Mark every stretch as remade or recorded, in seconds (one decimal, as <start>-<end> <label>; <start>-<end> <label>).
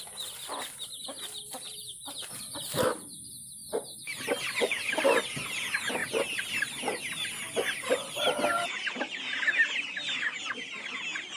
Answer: 0.0-1.9 recorded; 1.9-3.2 remade; 3.2-3.6 recorded; 3.6-4.9 remade; 4.9-8.5 recorded; 8.5-10.6 remade; 10.6-11.4 recorded